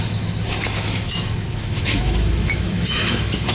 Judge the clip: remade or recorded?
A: remade